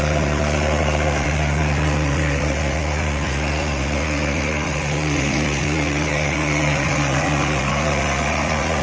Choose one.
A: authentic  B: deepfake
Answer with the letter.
B